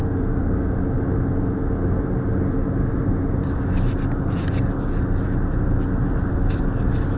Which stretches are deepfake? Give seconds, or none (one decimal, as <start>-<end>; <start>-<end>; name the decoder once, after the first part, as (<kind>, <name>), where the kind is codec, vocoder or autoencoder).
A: 0.0-0.6 (codec, DAC)

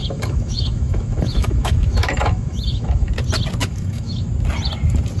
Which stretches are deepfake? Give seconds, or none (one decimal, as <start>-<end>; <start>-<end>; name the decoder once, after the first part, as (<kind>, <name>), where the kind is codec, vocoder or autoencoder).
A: 0.0-3.1 (autoencoder, DAC-VAE); 3.6-4.3

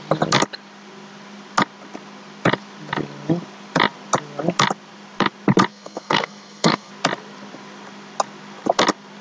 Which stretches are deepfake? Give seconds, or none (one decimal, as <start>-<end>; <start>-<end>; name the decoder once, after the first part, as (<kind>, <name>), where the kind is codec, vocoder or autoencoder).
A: 5.7-6.9 (codec, SNAC)